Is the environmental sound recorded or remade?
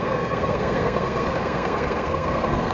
remade